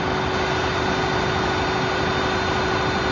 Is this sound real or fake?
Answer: real